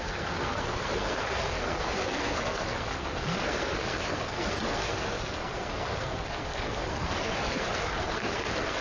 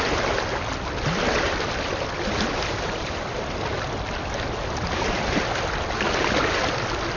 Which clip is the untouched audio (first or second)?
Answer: second